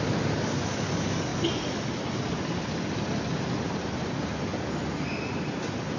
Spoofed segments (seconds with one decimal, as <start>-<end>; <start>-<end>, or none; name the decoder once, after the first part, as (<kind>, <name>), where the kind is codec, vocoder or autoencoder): none